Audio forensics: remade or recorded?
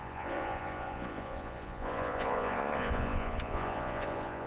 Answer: remade